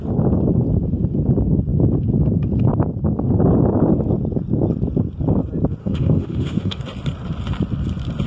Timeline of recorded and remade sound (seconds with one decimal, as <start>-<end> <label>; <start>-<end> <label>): 0.0-5.8 recorded; 5.8-6.8 remade; 6.8-8.3 recorded